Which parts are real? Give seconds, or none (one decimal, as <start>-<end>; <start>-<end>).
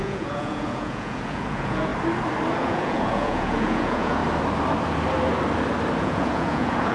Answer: 1.9-2.6; 4.2-6.0